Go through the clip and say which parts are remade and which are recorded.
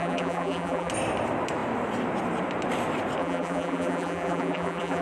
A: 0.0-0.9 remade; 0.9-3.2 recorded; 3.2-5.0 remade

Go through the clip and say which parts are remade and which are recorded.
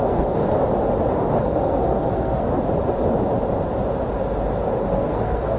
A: 0.0-0.4 remade; 0.4-1.4 recorded; 1.4-2.5 remade; 2.5-4.8 recorded; 4.8-5.6 remade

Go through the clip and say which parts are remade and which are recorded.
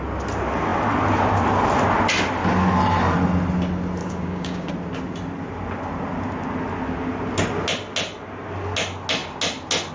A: 0.0-4.0 recorded; 4.0-4.7 remade; 4.7-9.9 recorded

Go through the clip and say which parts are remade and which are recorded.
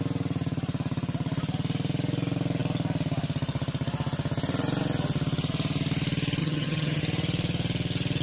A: 0.0-6.4 recorded; 6.4-7.0 remade; 7.0-8.2 recorded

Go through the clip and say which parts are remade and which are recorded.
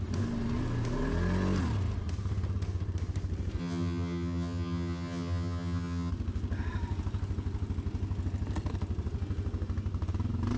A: 0.0-3.6 recorded; 3.6-6.1 remade; 6.1-10.6 recorded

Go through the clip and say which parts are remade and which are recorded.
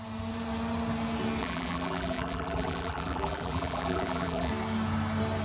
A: 0.0-1.4 recorded; 1.4-4.5 remade; 4.5-5.4 recorded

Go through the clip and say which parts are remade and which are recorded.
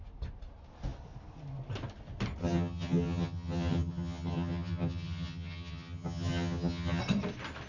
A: 0.0-2.4 recorded; 2.4-7.0 remade; 7.0-7.7 recorded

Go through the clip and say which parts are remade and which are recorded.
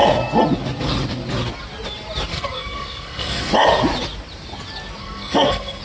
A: 0.0-2.3 recorded; 2.3-3.5 remade; 3.5-5.0 recorded; 5.0-5.8 remade